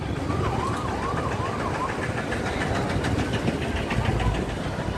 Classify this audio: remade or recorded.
recorded